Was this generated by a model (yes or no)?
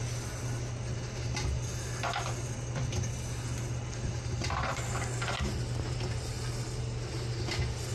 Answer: no